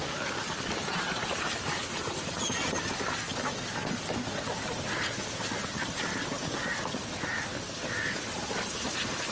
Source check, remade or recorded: recorded